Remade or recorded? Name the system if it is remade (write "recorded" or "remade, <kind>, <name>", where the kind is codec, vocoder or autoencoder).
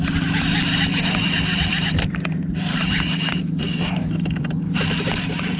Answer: remade, vocoder, BigVGAN v2